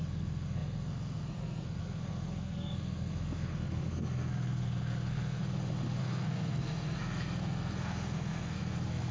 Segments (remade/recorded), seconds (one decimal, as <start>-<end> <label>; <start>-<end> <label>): 0.0-5.4 remade; 5.4-6.0 recorded; 6.0-9.1 remade